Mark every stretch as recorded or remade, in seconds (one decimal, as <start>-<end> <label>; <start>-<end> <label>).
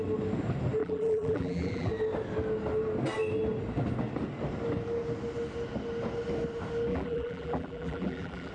0.0-0.8 recorded; 0.8-1.9 remade; 1.9-6.9 recorded; 6.9-8.5 remade